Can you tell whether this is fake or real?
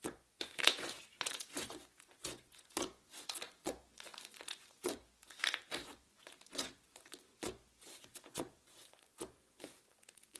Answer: fake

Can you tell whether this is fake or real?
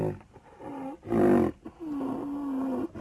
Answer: real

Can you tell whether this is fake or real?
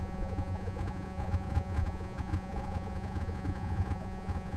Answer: fake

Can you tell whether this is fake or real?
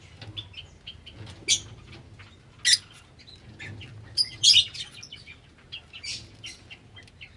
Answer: real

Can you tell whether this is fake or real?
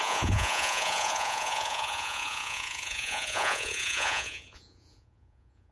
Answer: fake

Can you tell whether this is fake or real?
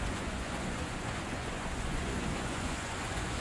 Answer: fake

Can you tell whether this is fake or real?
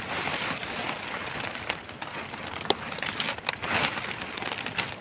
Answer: real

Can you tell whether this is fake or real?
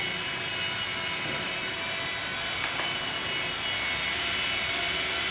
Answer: real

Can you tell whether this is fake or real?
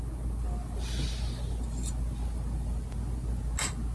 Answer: real